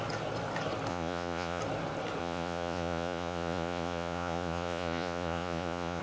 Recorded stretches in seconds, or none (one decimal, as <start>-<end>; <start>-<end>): 0.0-0.9; 1.6-2.2

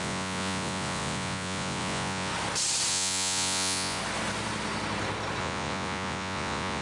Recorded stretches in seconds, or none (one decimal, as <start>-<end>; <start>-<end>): 2.3-2.9; 4.0-5.4

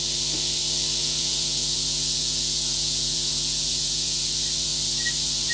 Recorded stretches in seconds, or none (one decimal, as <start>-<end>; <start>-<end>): 0.0-1.0; 4.3-5.5

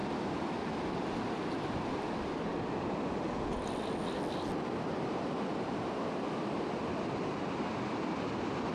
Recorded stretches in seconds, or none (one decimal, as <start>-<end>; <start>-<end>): 0.0-8.7

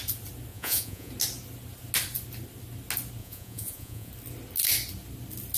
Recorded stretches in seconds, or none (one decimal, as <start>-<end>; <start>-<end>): 0.0-0.5; 1.1-3.2; 4.1-5.6

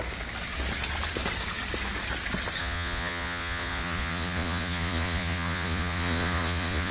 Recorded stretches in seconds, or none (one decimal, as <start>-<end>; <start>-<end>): 0.0-2.6